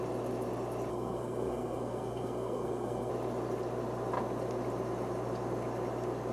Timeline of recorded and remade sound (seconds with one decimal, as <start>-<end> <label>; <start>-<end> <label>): 0.0-0.9 recorded; 0.9-3.1 remade; 3.1-6.3 recorded